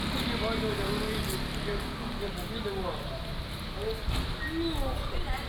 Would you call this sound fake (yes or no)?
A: no